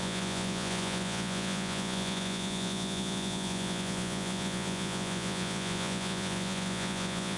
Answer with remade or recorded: remade